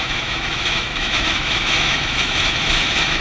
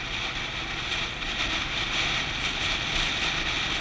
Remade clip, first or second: first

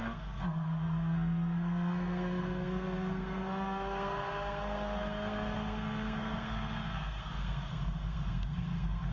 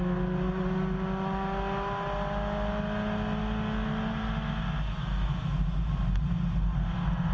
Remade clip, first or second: first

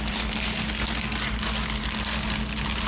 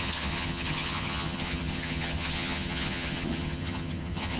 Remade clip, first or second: second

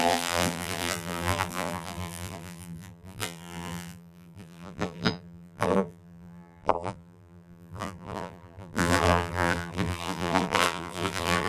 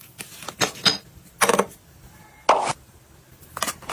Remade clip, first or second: first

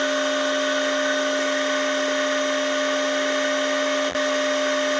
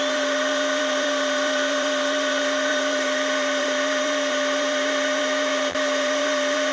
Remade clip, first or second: second